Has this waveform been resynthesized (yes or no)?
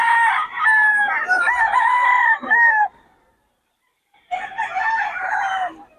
yes